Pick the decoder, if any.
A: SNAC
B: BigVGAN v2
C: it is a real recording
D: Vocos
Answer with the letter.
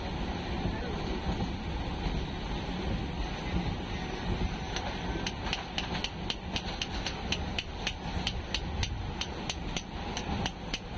C